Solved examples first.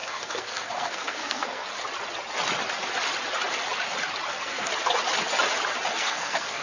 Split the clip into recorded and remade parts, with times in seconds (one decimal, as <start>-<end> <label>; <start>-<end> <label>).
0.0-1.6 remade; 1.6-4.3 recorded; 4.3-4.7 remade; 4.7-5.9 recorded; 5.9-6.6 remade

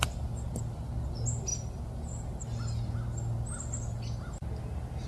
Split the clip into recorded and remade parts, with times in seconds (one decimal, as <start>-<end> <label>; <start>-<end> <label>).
0.0-5.1 recorded

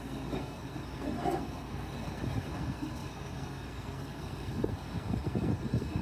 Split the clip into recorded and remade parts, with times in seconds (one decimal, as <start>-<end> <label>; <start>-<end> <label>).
0.0-6.0 remade

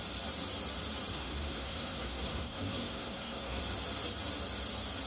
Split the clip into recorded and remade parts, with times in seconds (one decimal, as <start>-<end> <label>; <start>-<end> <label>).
0.0-1.1 recorded; 1.1-3.6 remade; 3.6-5.1 recorded

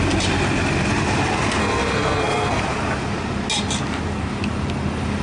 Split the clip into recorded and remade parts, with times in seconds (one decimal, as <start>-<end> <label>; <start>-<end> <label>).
0.0-1.6 recorded; 1.6-2.6 remade; 2.6-5.2 recorded

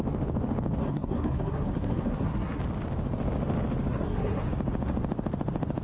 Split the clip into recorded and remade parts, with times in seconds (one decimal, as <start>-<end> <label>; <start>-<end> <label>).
0.0-0.8 recorded; 0.8-2.6 remade; 2.6-3.9 recorded; 3.9-4.5 remade; 4.5-5.8 recorded

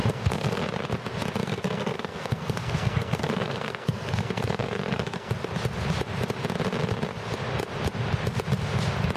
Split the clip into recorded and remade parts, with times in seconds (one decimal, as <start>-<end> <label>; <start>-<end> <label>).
0.0-0.6 remade; 0.6-1.4 recorded; 1.4-5.3 remade; 5.3-9.2 recorded

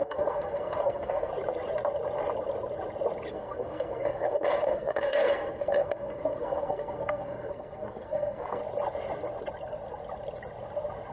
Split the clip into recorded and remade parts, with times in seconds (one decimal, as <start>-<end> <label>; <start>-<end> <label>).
0.0-1.3 remade; 1.3-3.3 recorded; 3.3-8.6 remade; 8.6-11.1 recorded